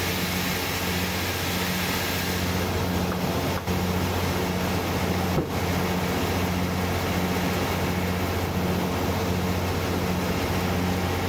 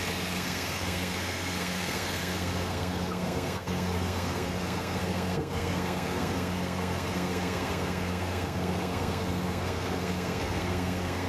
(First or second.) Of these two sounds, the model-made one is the second